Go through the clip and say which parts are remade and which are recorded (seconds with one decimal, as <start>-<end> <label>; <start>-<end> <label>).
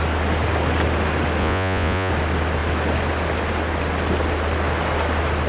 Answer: 0.0-1.4 recorded; 1.4-2.1 remade; 2.1-5.5 recorded